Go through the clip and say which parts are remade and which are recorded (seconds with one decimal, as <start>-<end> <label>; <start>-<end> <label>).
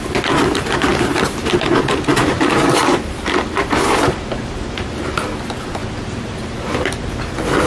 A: 0.0-0.9 recorded; 0.9-4.9 remade; 4.9-7.7 recorded